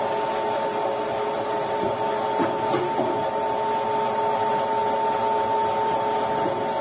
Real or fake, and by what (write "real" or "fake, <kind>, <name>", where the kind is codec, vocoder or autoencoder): real